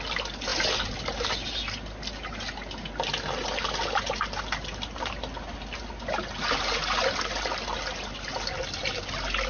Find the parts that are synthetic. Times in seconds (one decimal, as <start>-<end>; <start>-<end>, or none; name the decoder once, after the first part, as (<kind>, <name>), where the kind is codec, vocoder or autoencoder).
none